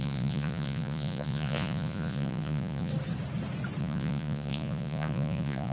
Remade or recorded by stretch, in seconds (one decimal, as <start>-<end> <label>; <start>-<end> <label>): 0.0-2.9 remade; 2.9-3.8 recorded; 3.8-5.7 remade